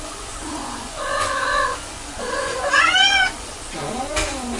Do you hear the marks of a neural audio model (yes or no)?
yes